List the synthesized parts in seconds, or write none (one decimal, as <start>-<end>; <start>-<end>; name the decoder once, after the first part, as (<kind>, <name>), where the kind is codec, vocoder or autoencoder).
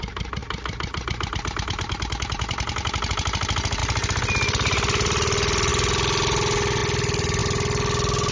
none